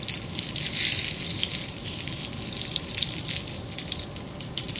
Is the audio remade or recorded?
recorded